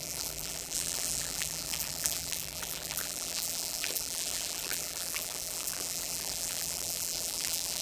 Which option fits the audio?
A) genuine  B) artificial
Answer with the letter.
B